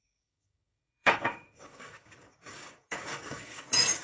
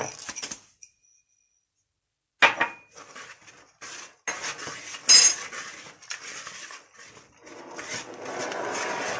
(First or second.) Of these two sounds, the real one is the second